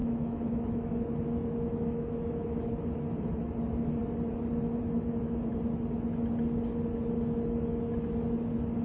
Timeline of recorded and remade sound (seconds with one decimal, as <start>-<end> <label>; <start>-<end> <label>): 0.0-2.7 remade; 2.7-8.8 recorded